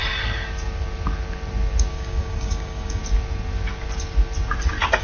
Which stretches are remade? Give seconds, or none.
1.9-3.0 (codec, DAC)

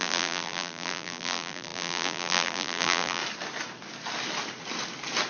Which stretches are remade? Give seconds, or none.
0.0-3.2 (vocoder, BigVGAN v2)

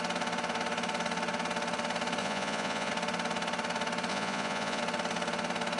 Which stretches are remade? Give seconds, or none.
2.2-2.9 (vocoder, Vocos); 4.1-4.8

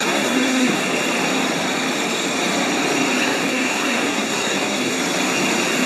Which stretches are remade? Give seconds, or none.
0.0-0.8 (codec, SNAC); 3.2-4.9

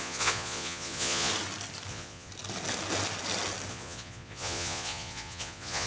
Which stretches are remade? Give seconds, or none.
0.0-1.3 (vocoder, Vocos); 1.9-2.3; 3.7-5.9